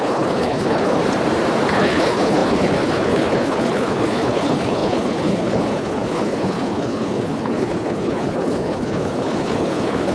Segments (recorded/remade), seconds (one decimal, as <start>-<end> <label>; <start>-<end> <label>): 0.0-1.0 remade; 1.0-1.7 recorded; 1.7-10.1 remade